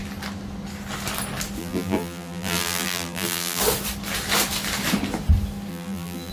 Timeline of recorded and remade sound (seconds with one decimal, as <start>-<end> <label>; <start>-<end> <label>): 0.0-1.6 recorded; 1.6-3.6 remade; 3.6-5.7 recorded; 5.7-6.3 remade